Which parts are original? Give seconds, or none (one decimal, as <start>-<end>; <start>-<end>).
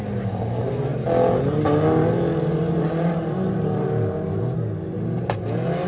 0.0-5.9